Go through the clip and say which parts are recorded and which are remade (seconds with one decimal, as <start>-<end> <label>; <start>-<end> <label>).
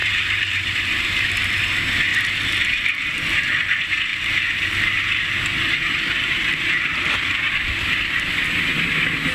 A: 0.0-1.6 remade; 1.6-2.1 recorded; 2.1-3.4 remade; 3.4-4.1 recorded; 4.1-7.5 remade; 7.5-9.3 recorded